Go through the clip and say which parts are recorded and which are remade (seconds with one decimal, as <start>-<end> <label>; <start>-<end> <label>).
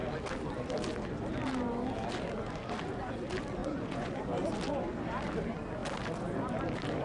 0.0-3.6 recorded; 3.6-4.2 remade; 4.2-7.0 recorded